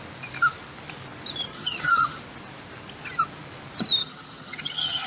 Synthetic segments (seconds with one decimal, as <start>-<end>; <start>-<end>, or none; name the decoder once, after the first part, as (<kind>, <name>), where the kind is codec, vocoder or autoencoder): 1.5-2.2 (vocoder, HiFi-GAN); 4.0-5.1